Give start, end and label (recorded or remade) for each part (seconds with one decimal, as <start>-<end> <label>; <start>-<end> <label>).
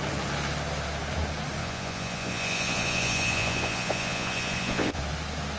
0.0-1.6 recorded; 1.6-5.0 remade; 5.0-5.6 recorded